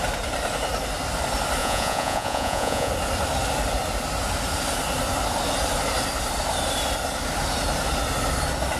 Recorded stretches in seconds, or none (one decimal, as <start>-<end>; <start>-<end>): 0.0-1.6; 2.9-8.8